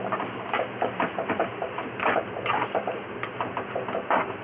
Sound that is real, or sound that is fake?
real